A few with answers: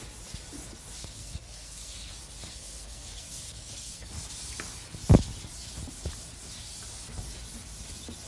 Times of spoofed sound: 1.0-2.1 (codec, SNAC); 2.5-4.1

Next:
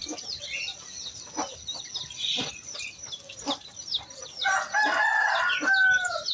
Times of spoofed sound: none

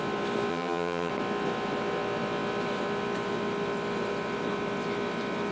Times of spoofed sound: 0.5-1.1 (vocoder, HiFi-GAN)

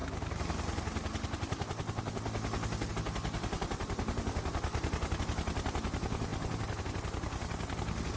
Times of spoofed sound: none